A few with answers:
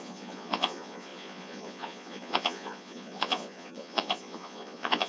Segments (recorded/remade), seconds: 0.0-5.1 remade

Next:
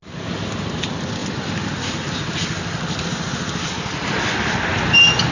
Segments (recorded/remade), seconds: 0.0-5.3 recorded

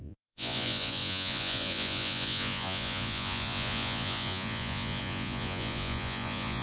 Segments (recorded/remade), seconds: 0.0-6.6 remade